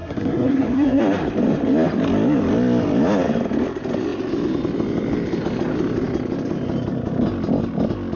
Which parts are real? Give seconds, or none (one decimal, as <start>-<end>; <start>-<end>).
1.0-8.2